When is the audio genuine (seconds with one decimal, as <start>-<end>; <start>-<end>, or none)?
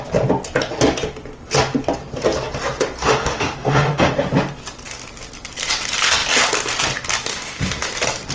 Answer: 0.0-3.0; 4.1-7.3; 7.9-8.3